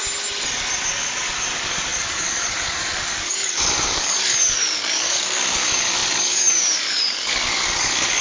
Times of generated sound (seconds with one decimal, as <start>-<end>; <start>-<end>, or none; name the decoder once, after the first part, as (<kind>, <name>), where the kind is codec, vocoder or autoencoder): 0.8-8.2 (codec, DAC)